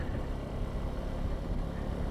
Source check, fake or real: fake